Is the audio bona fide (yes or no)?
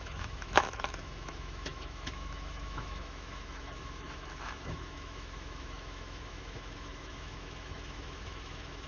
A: no